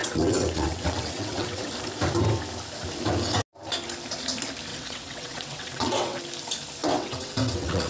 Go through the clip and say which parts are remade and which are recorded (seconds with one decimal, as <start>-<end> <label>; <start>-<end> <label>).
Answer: 0.0-1.7 remade; 1.7-4.7 recorded; 4.7-6.2 remade; 6.2-6.8 recorded; 6.8-7.9 remade